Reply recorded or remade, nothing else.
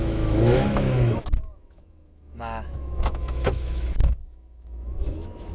remade